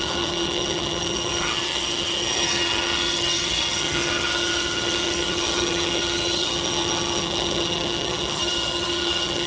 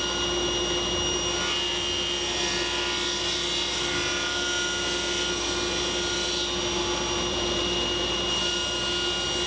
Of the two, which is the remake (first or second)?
first